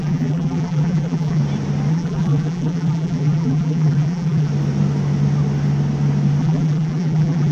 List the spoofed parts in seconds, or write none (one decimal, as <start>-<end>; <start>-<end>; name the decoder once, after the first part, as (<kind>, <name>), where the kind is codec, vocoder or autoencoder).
0.0-1.4 (vocoder, BigVGAN v2); 1.9-4.5; 6.4-7.5